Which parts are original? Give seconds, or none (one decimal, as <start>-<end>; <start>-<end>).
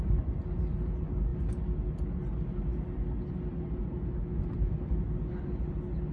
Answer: 0.0-6.1